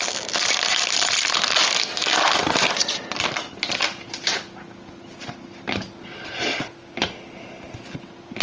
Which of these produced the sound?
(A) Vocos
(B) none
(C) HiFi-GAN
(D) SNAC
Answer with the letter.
B